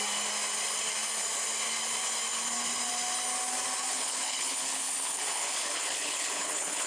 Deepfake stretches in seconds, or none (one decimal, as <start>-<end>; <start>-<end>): 3.9-6.9